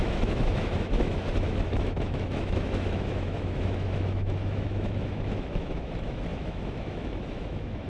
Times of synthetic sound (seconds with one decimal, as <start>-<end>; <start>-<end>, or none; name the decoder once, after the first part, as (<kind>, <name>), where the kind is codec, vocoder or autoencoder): 0.0-7.9 (autoencoder, DAC-VAE)